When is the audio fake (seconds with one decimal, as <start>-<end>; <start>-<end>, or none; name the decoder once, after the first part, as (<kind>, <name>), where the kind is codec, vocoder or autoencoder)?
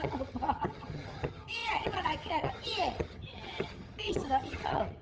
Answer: 0.0-5.0 (vocoder, HiFi-GAN)